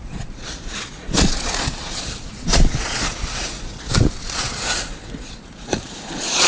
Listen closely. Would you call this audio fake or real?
fake